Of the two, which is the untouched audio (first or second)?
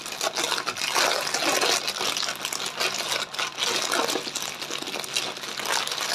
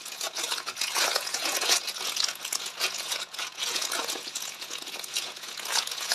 first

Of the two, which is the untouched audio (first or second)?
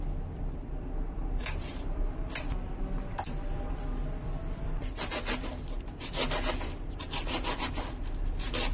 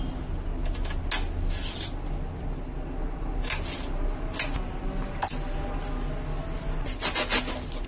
second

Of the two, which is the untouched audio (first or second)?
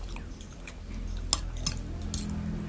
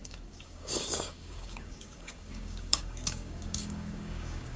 first